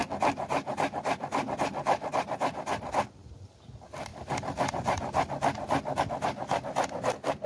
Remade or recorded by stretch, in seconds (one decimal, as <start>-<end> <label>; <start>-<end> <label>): 0.0-7.5 recorded